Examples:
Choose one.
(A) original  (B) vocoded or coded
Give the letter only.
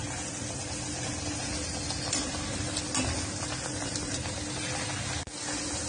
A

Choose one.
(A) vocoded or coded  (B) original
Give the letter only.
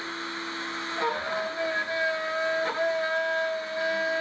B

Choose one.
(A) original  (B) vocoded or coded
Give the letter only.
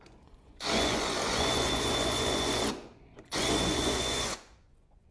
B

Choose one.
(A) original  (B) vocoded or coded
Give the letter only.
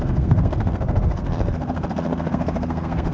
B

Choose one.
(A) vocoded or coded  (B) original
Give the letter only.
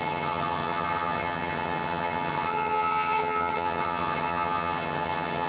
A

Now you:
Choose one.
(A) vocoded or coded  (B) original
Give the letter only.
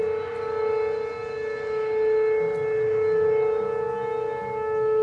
B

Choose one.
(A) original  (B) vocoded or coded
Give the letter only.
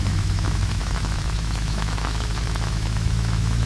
B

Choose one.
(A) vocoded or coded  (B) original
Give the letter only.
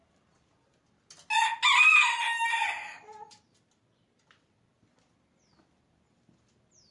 B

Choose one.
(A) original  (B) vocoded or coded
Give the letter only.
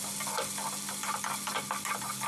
A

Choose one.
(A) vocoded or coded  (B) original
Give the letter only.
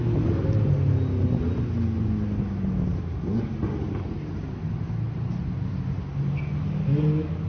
B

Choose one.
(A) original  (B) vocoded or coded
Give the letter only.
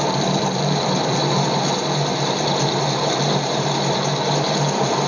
A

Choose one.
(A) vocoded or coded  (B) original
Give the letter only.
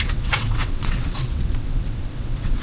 A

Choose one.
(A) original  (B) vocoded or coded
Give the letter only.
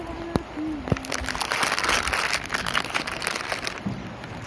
A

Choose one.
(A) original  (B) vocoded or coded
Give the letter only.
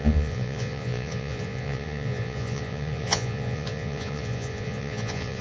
B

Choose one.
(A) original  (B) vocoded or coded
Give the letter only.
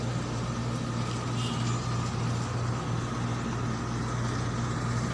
A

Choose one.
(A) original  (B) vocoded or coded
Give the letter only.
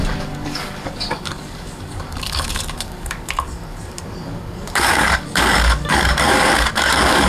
B